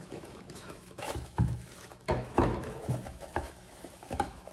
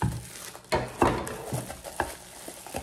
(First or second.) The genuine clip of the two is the second